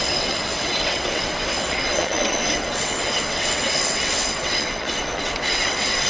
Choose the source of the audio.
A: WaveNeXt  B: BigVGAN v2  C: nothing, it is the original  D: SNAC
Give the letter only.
A